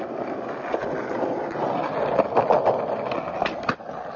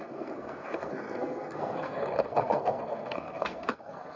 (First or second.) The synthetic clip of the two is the second